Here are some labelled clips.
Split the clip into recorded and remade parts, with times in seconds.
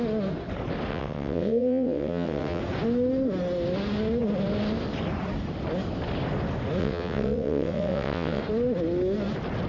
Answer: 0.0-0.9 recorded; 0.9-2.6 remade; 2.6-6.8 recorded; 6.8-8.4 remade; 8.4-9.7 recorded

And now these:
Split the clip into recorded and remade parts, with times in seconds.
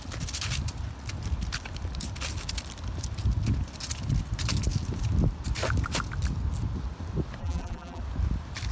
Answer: 0.0-7.4 recorded; 7.4-8.0 remade; 8.0-8.7 recorded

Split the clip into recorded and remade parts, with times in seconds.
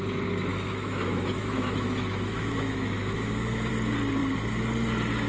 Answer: 0.0-0.5 recorded; 0.5-3.7 remade; 3.7-5.3 recorded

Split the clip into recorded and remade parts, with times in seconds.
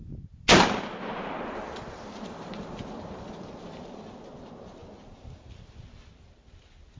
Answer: 0.0-7.0 recorded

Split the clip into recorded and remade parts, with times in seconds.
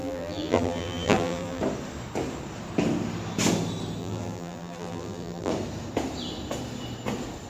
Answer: 0.0-1.6 remade; 1.6-4.0 recorded; 4.0-5.5 remade; 5.5-7.5 recorded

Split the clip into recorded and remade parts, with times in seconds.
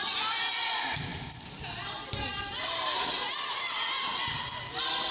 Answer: 0.0-4.1 recorded; 4.1-5.1 remade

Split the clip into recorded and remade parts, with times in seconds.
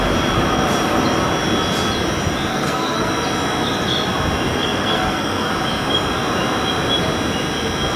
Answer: 0.0-2.5 recorded; 2.5-3.1 remade; 3.1-4.5 recorded; 4.5-5.5 remade; 5.5-8.0 recorded